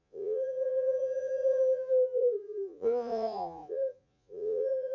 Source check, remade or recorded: remade